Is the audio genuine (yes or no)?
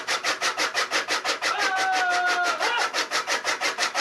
yes